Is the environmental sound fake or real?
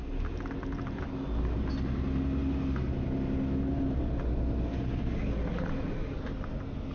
real